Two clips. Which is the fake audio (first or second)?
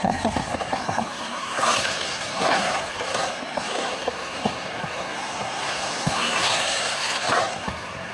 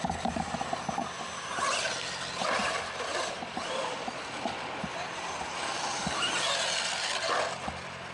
first